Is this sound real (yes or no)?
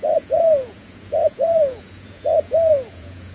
no